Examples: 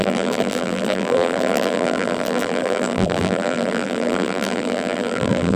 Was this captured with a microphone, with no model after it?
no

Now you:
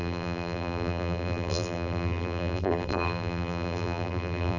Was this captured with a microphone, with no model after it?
no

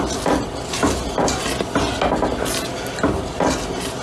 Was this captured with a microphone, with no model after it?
yes